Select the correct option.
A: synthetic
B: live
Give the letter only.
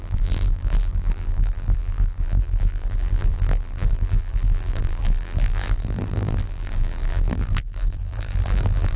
A